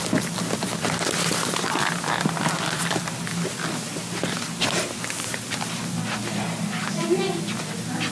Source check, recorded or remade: recorded